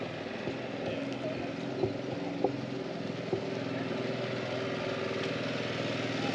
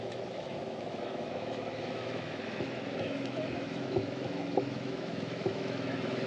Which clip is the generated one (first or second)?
second